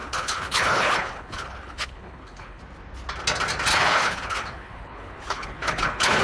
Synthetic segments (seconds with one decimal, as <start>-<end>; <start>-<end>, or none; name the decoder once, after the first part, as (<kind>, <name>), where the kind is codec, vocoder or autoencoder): 0.0-2.6 (codec, HILCodec); 3.7-6.2